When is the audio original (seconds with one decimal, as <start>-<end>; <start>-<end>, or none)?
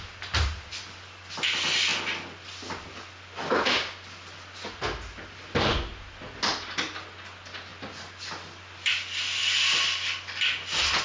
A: 0.0-11.0